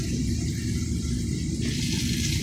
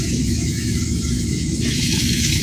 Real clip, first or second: first